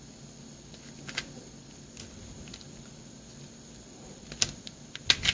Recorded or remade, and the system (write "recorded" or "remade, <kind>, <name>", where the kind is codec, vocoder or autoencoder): recorded